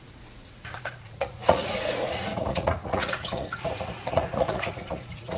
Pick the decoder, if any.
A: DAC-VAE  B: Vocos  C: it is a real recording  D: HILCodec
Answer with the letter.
B